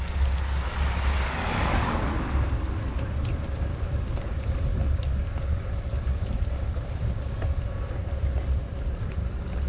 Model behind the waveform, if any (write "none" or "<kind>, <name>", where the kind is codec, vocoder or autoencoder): none